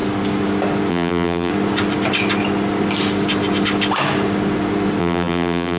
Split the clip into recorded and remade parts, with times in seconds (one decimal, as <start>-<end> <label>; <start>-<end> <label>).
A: 0.0-0.9 recorded; 0.9-1.5 remade; 1.5-5.0 recorded; 5.0-5.8 remade